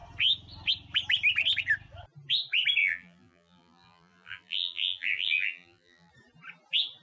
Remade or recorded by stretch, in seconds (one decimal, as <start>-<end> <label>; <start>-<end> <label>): 0.0-2.8 recorded; 2.8-6.1 remade; 6.1-7.0 recorded